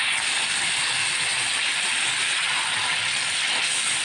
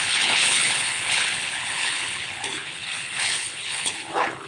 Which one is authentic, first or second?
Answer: first